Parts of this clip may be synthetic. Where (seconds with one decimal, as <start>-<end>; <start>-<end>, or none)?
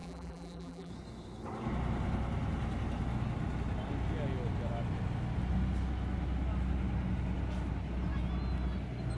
0.0-0.9